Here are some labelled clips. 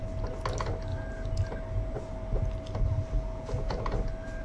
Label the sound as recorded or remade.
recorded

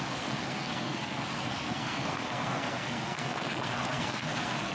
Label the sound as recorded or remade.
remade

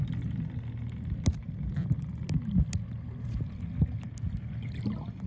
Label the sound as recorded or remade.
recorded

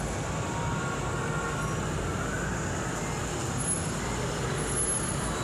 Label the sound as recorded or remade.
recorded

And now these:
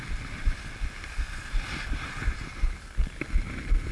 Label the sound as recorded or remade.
recorded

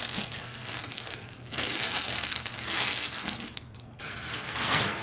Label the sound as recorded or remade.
remade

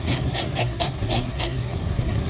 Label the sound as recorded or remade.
remade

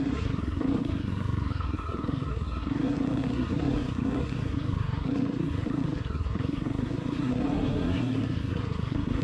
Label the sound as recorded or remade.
remade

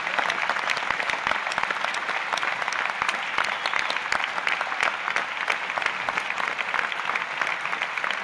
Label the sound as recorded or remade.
recorded